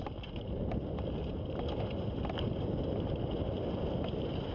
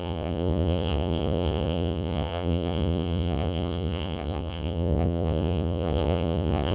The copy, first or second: second